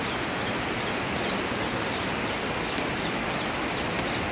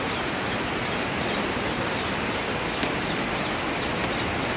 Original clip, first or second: first